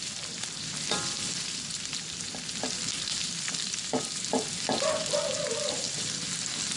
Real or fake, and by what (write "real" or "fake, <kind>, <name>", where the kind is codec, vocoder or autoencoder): fake, vocoder, BigVGAN v2